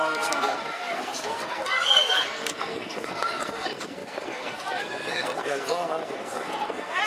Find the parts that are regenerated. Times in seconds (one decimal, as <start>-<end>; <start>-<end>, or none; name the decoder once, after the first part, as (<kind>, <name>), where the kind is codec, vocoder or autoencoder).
0.0-7.1 (codec, SNAC)